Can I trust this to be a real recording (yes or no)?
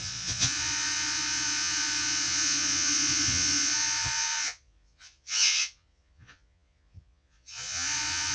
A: no